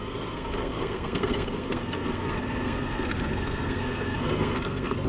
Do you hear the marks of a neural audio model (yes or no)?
yes